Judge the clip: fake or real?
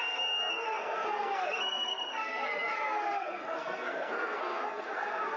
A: fake